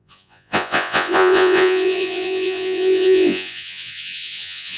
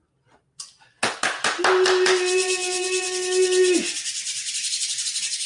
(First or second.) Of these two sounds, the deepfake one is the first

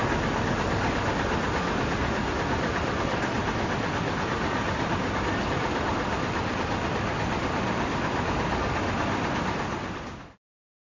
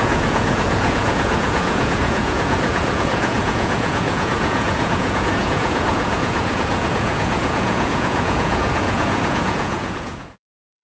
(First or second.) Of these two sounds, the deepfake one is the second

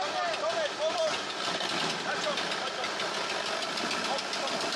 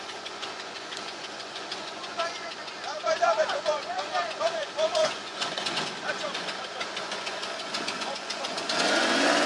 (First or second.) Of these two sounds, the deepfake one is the second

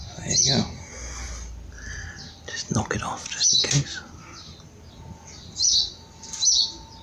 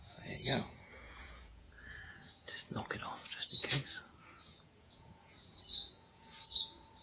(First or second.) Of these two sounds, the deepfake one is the second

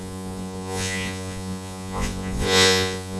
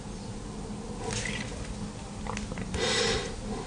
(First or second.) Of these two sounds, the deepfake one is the first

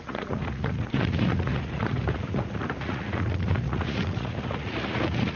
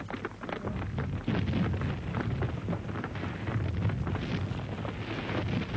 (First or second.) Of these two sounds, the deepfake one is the first